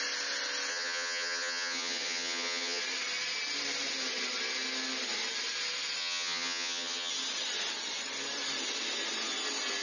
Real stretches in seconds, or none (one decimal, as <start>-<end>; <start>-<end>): 0.0-0.7; 2.8-6.0; 7.1-9.8